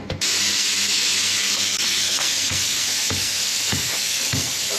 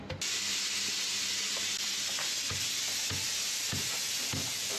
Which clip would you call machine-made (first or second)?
first